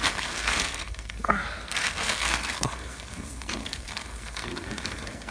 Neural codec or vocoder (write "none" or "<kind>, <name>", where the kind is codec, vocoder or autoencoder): codec, SNAC